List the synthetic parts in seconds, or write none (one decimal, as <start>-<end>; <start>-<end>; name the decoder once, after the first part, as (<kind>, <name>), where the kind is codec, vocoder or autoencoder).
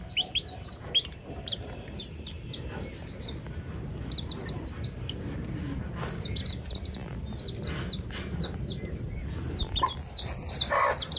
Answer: none